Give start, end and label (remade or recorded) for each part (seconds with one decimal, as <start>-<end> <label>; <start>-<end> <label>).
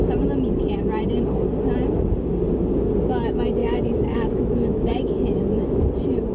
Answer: 0.0-3.6 recorded; 3.6-5.8 remade; 5.8-6.3 recorded